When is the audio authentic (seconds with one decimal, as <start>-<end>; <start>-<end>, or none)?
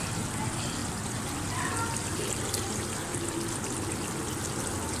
0.0-5.0